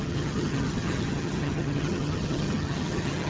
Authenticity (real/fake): fake